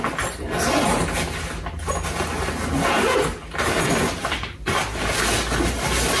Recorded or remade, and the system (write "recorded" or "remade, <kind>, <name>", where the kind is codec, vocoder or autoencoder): recorded